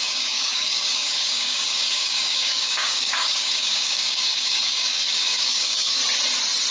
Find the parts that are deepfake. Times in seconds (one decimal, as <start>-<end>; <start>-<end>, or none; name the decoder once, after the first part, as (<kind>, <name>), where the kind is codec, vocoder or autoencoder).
0.0-6.0 (codec, DAC)